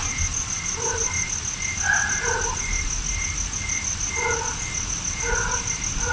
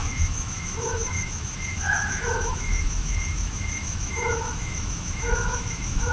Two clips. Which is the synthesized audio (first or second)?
second